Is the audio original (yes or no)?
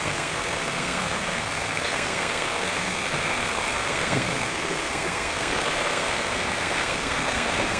no